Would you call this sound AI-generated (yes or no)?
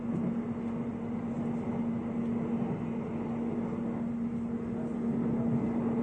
no